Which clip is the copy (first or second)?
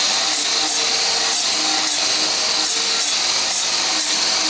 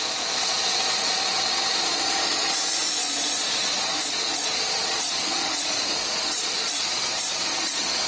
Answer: second